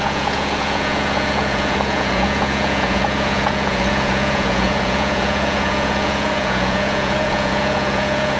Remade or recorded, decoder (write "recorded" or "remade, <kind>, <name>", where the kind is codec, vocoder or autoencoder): remade, vocoder, Vocos